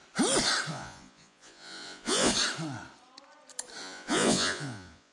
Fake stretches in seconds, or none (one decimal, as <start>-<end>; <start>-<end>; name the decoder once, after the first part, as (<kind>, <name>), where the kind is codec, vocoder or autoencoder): 0.7-2.3 (vocoder, Vocos); 3.8-5.1